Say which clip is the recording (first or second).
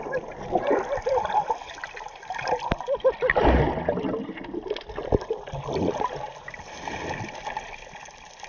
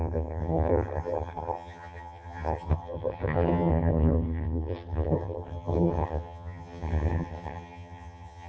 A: first